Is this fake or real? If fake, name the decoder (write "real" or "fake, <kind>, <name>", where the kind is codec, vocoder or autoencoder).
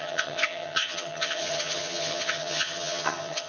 fake, vocoder, HiFi-GAN